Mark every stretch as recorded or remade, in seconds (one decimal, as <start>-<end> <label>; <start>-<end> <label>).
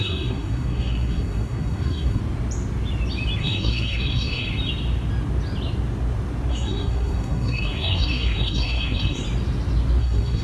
0.0-2.2 remade; 2.2-3.4 recorded; 3.4-4.5 remade; 4.5-6.5 recorded; 6.5-9.2 remade; 9.2-10.0 recorded; 10.0-10.4 remade